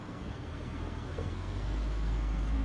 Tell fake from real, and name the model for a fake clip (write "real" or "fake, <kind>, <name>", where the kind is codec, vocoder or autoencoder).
fake, codec, SNAC